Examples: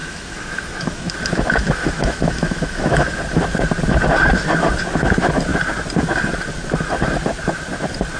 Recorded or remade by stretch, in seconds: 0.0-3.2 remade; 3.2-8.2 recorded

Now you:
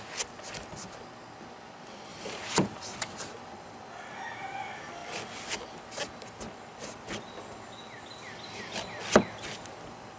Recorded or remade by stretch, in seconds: 0.0-2.1 recorded; 2.1-3.2 remade; 3.2-10.2 recorded

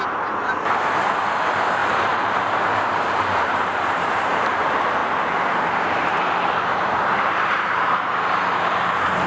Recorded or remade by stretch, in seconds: 0.0-1.8 recorded; 1.8-4.4 remade; 4.4-6.7 recorded; 6.7-9.3 remade

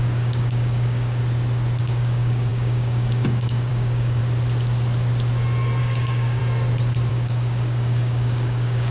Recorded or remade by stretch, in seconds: 0.0-1.2 remade; 1.2-1.8 recorded; 1.8-4.2 remade; 4.2-5.8 recorded; 5.8-6.4 remade; 6.4-7.1 recorded; 7.1-8.9 remade

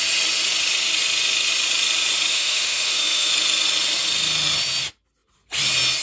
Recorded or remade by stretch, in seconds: 0.0-2.3 recorded; 2.3-3.3 remade; 3.3-6.0 recorded

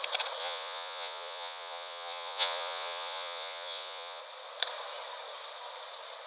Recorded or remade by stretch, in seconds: 0.0-0.4 recorded; 0.4-4.2 remade; 4.2-6.3 recorded

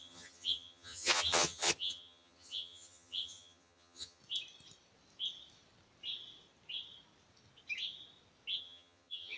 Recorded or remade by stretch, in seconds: 0.0-4.2 remade; 4.2-8.6 recorded; 8.6-9.4 remade

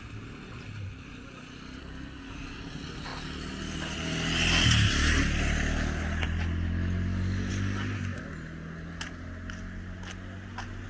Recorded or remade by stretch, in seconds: 0.0-1.8 recorded; 1.8-2.3 remade; 2.3-10.9 recorded